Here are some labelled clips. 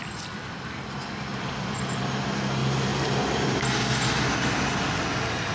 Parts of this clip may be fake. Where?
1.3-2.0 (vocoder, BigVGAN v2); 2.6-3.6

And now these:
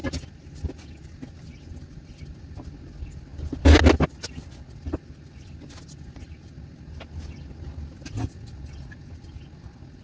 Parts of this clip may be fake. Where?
none

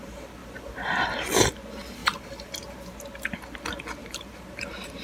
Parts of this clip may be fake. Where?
0.4-1.1 (vocoder, BigVGAN v2); 2.0-2.8; 4.0-5.0